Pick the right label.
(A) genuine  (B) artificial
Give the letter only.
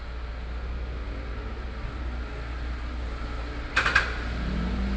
A